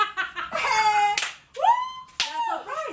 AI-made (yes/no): no